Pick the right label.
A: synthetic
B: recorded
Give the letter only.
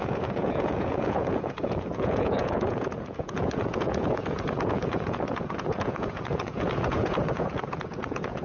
A